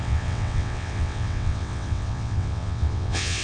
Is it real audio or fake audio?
fake